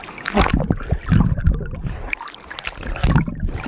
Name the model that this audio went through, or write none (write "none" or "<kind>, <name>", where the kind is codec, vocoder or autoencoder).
none